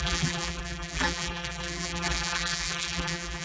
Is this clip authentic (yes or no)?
no